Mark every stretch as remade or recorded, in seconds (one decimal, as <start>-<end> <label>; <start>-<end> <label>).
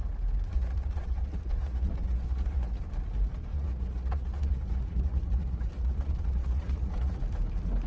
0.0-0.5 recorded; 0.5-2.8 remade; 2.8-3.5 recorded; 3.5-7.2 remade; 7.2-7.9 recorded